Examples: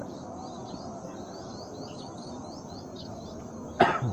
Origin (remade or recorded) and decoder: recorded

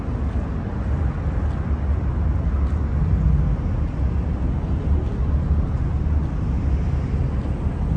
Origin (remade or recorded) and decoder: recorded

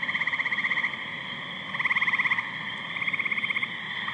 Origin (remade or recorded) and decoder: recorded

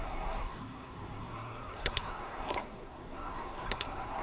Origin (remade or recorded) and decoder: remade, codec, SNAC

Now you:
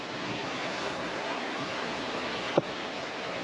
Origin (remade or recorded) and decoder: remade, codec, SNAC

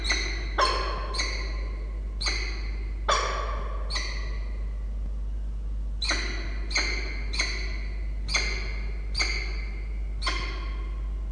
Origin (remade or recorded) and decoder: recorded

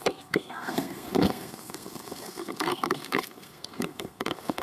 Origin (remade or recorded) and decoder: remade, codec, SNAC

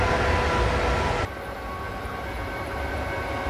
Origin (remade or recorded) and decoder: recorded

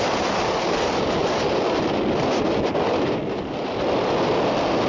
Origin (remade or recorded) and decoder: recorded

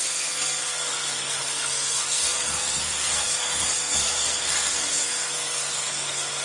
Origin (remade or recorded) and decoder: remade, codec, SNAC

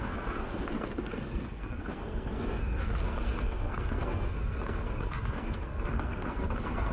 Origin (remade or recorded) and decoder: remade, codec, SNAC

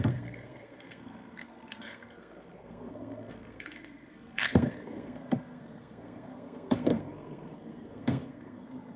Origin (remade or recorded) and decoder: remade, codec, SNAC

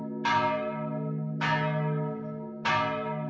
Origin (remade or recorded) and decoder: recorded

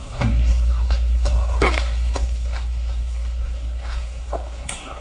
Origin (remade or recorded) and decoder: remade, codec, SNAC